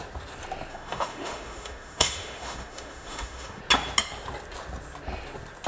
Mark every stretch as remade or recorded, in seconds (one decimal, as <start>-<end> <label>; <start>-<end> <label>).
0.0-0.7 recorded; 0.7-3.6 remade; 3.6-5.7 recorded